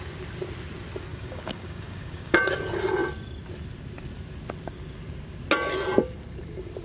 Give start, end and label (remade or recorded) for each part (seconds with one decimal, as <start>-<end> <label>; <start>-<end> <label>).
0.0-1.1 recorded; 1.1-2.4 remade; 2.4-6.8 recorded